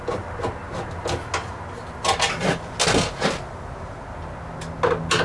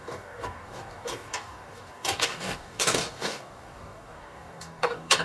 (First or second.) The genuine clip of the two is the first